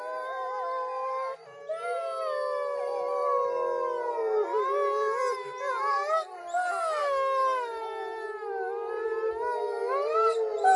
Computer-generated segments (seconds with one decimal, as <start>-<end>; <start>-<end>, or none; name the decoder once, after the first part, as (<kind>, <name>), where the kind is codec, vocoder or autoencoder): none